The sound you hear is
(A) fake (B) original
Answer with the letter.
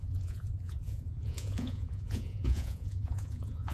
A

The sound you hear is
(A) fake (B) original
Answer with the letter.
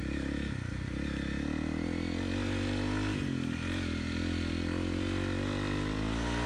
B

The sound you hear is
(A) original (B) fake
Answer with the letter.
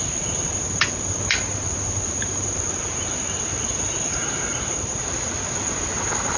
A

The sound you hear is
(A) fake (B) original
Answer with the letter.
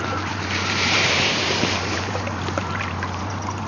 A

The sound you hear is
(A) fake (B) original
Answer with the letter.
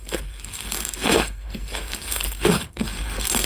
A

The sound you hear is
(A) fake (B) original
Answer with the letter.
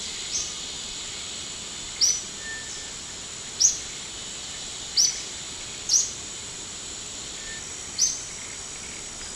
B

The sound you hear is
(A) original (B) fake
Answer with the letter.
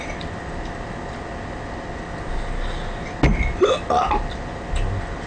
A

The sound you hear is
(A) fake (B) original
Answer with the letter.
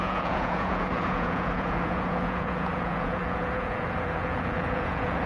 A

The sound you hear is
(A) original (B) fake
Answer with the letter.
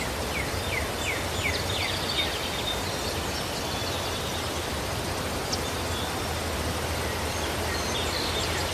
A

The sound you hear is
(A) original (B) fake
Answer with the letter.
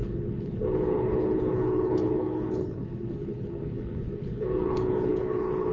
B